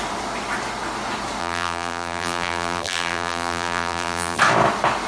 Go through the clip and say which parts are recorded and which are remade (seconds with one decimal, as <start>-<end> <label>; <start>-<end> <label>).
0.0-1.4 recorded; 1.4-4.4 remade; 4.4-5.1 recorded